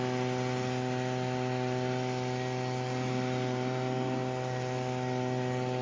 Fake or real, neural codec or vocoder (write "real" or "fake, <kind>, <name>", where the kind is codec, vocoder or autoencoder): real